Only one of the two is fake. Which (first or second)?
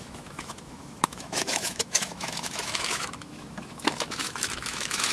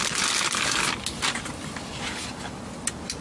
first